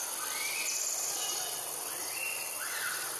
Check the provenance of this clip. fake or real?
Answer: real